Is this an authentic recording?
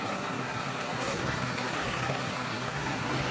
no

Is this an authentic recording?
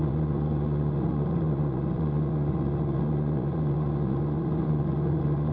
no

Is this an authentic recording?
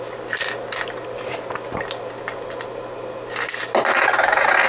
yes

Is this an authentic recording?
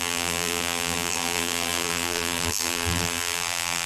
no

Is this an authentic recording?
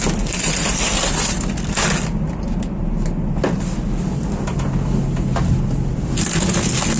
yes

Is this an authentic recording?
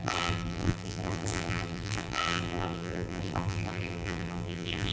no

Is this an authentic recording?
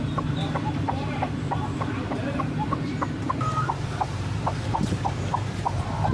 no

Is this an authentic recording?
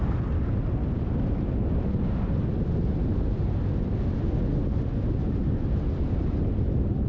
yes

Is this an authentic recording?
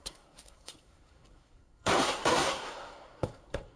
no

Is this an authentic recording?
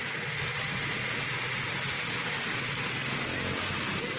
yes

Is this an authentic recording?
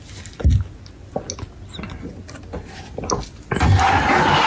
yes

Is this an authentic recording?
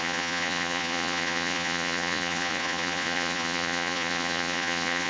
no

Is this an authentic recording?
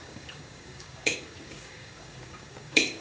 no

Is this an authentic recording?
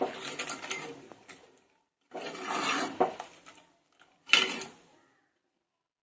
yes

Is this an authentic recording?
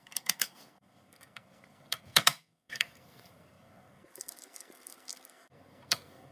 no